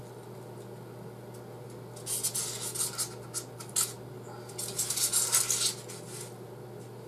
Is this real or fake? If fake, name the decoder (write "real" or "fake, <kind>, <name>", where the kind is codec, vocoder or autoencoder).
real